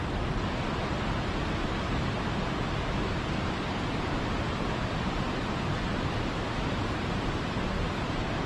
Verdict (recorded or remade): recorded